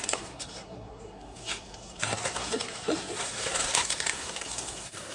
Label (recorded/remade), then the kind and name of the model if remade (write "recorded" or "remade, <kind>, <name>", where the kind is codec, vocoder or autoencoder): remade, codec, SNAC